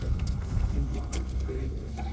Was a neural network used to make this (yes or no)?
yes